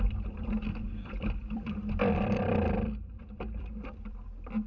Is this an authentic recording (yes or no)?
no